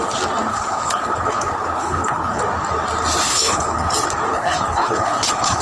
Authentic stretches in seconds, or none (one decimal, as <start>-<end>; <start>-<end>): 0.0-0.5; 2.4-3.3; 3.9-4.3